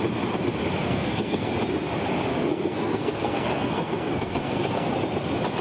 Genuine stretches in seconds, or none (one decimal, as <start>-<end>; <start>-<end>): 0.0-0.8; 1.5-2.3; 4.9-5.6